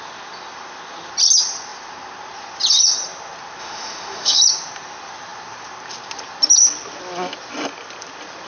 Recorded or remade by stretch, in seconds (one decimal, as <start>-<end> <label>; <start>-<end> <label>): 0.0-3.6 recorded; 3.6-4.4 remade; 4.4-8.5 recorded